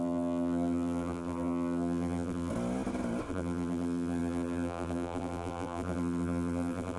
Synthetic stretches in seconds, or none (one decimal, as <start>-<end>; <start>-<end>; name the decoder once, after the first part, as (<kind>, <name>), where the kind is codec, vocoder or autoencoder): 0.0-2.5 (vocoder, BigVGAN v2); 3.3-7.0